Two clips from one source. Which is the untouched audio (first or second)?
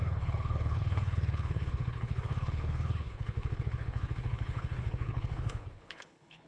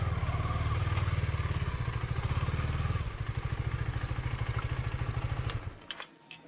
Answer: second